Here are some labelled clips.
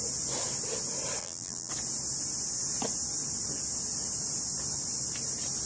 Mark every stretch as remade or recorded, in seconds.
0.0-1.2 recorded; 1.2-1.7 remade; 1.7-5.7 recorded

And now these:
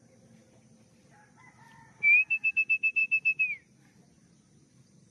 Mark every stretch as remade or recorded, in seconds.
0.0-5.1 recorded

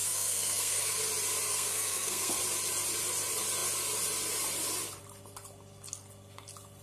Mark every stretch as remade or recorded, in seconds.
0.0-1.0 remade; 1.0-1.5 recorded; 1.5-2.4 remade; 2.4-6.8 recorded

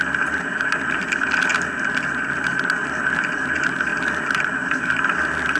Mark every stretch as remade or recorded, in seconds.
0.0-3.9 recorded; 3.9-4.6 remade; 4.6-5.6 recorded